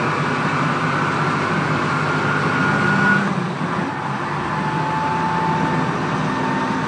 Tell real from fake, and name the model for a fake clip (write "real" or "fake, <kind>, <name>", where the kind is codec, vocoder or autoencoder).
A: real